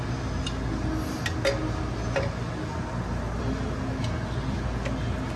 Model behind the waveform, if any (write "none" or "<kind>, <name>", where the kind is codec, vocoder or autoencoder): none